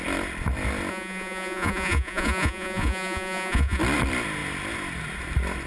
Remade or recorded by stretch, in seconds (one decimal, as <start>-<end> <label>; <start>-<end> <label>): 0.0-0.9 recorded; 0.9-3.8 remade; 3.8-5.7 recorded

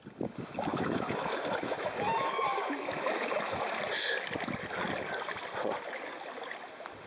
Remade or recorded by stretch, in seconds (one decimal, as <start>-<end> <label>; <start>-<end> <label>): 0.0-0.7 recorded; 0.7-3.7 remade; 3.7-7.1 recorded

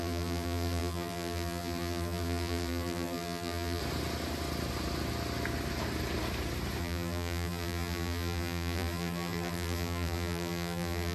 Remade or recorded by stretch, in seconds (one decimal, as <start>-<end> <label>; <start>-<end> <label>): 0.0-3.8 remade; 3.8-6.8 recorded; 6.8-11.1 remade